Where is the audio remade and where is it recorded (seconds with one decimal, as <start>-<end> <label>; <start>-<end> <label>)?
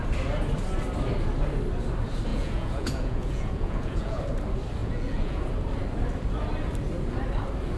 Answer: 0.0-2.3 recorded; 2.3-4.2 remade; 4.2-4.8 recorded; 4.8-5.4 remade; 5.4-7.8 recorded